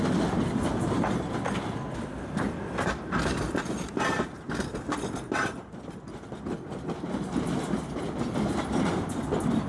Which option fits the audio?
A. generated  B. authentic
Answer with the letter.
B